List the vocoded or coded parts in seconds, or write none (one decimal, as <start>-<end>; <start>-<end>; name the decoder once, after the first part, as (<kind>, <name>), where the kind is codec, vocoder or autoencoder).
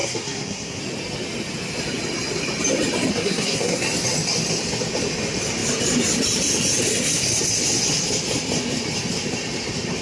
0.0-0.8 (codec, SNAC); 3.1-3.8